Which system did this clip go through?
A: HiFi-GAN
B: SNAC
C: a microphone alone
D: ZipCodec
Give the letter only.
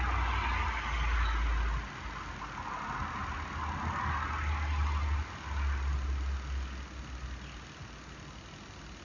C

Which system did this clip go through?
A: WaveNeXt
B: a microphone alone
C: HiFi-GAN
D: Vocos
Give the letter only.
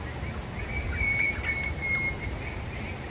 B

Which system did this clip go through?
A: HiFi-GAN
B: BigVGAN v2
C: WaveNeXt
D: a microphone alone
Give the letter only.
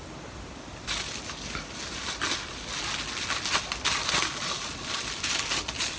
D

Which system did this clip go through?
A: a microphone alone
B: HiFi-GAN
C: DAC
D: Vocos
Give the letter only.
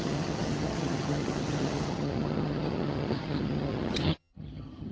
B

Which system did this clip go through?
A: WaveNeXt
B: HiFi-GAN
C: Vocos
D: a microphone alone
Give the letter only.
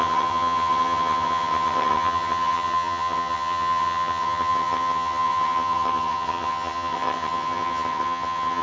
B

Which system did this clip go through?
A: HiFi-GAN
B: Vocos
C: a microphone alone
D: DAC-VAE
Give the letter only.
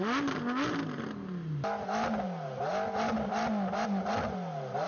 C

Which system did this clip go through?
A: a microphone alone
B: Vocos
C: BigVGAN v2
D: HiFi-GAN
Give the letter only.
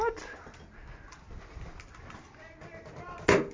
A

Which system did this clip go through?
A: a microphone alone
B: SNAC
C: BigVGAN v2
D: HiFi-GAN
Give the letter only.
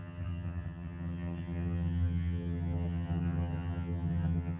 D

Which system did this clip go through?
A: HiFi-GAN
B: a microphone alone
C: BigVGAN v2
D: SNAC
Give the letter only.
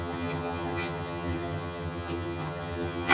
A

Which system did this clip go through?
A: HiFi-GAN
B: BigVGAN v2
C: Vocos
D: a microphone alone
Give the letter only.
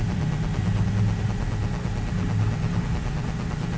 D